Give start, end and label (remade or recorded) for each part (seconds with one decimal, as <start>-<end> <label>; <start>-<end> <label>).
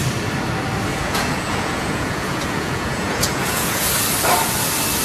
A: 0.0-0.9 recorded; 0.9-3.9 remade; 3.9-5.0 recorded